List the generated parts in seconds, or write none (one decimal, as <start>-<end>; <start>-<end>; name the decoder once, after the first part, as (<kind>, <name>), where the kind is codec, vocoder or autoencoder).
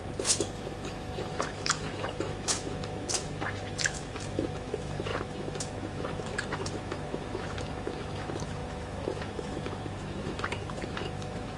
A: 0.0-11.6 (autoencoder, DAC-VAE)